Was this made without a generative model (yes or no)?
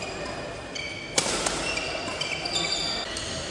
yes